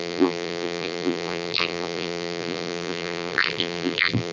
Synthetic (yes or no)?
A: yes